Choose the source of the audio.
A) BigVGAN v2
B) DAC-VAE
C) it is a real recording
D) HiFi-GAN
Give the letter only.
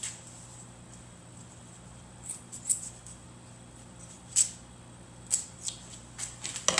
C